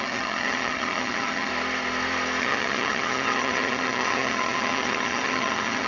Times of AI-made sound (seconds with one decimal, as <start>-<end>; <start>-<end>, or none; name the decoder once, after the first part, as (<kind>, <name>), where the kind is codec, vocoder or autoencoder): 0.0-1.5 (vocoder, HiFi-GAN); 2.4-5.9